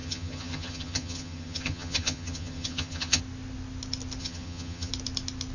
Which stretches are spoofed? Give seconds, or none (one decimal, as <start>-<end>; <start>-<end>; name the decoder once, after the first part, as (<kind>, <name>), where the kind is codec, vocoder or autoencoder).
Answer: 0.0-3.2 (vocoder, HiFi-GAN); 4.2-4.9

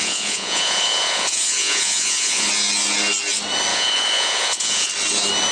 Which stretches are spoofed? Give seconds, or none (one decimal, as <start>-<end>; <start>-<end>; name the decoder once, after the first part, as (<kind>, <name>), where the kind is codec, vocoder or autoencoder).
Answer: 0.0-2.5 (vocoder, Vocos); 3.7-4.9

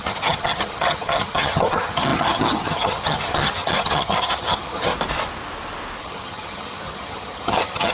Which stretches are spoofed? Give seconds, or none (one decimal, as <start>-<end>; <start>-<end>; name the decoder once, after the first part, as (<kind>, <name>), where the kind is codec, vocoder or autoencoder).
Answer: 0.0-4.9 (vocoder, HiFi-GAN); 6.0-7.9

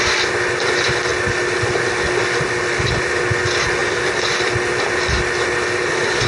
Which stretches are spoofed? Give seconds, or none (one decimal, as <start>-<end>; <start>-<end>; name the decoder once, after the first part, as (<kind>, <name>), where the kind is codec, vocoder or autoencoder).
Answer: none